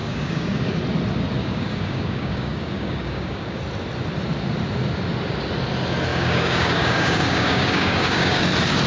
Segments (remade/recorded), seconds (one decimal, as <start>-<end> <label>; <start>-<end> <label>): 0.0-0.8 remade; 0.8-1.4 recorded; 1.4-3.6 remade; 3.6-6.1 recorded; 6.1-8.4 remade; 8.4-8.9 recorded